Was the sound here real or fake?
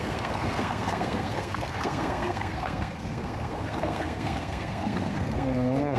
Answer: fake